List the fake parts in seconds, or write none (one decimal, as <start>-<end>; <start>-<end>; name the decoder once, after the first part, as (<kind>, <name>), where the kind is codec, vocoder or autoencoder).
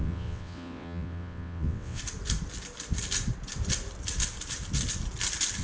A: 0.0-2.0 (vocoder, WaveNeXt)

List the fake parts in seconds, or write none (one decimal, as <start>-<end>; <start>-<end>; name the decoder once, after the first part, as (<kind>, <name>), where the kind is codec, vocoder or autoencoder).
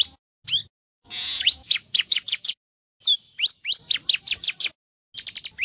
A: 0.9-2.5 (vocoder, Vocos)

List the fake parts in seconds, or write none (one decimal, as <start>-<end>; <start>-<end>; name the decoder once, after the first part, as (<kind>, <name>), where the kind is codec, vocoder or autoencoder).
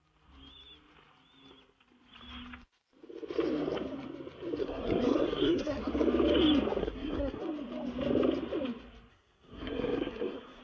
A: 4.6-5.8 (codec, SNAC); 6.8-7.4; 9.1-10.6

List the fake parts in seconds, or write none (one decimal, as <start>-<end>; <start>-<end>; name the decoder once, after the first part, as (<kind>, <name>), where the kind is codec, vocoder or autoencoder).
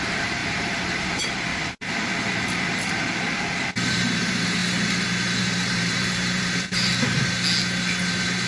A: 0.0-1.5 (vocoder, BigVGAN v2); 3.9-4.6; 5.4-6.9; 8.0-8.5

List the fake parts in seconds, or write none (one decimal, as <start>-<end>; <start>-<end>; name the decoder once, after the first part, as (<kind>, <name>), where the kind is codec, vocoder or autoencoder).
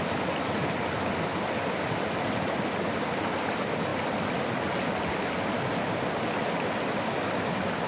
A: none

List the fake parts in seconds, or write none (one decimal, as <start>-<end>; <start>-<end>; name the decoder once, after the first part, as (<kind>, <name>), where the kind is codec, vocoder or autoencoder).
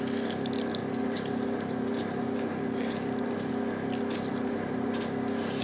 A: 0.8-3.5 (vocoder, BigVGAN v2); 4.3-5.0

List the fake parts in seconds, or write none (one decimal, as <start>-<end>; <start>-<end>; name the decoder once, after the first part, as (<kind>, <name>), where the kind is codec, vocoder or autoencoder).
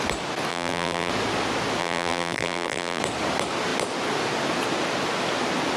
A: 0.5-1.1 (vocoder, BigVGAN v2); 1.8-3.0